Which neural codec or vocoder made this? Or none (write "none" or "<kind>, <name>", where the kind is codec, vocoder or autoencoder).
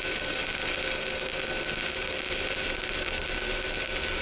none